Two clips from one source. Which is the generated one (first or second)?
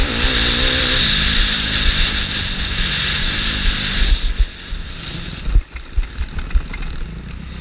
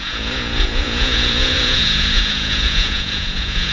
second